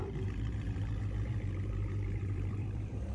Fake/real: fake